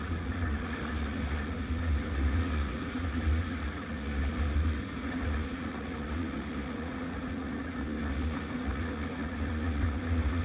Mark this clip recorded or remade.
remade